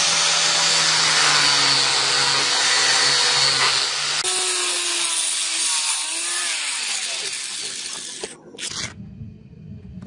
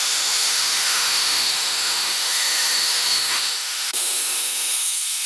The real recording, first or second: first